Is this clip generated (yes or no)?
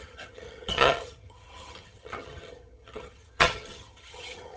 yes